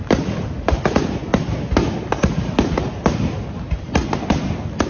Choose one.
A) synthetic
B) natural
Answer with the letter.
B